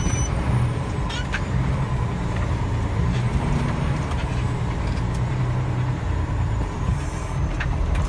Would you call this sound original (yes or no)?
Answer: no